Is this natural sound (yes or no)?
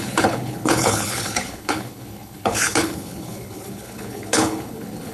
no